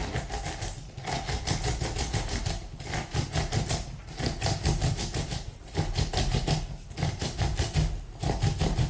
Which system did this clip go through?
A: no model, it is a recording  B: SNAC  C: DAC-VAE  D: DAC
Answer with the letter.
A